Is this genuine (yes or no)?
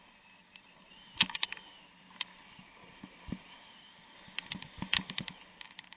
yes